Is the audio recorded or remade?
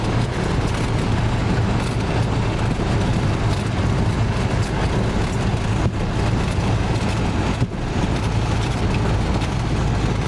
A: recorded